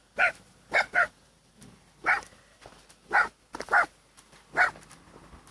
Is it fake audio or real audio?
real